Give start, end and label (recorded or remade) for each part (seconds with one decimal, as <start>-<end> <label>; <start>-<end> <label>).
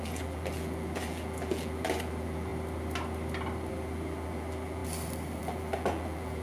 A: 0.0-2.5 remade; 2.5-3.7 recorded; 3.7-4.8 remade; 4.8-5.4 recorded; 5.4-6.4 remade